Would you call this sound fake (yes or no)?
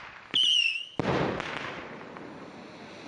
no